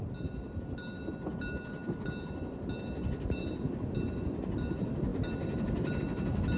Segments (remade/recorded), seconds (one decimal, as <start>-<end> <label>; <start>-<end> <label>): 0.0-6.6 recorded